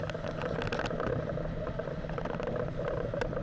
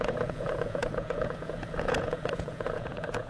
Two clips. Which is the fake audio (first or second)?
second